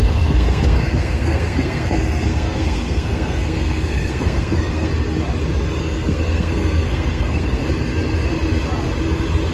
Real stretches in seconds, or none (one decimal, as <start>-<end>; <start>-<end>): 4.9-5.8; 7.6-9.5